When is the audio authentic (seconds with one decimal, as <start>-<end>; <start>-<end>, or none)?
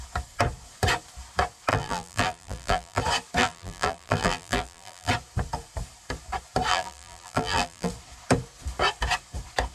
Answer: 0.0-1.7; 3.0-3.4; 5.1-6.7; 7.9-9.7